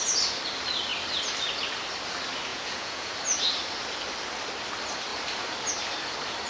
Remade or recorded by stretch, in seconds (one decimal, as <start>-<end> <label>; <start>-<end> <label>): 0.0-2.5 recorded; 2.5-3.1 remade; 3.1-6.5 recorded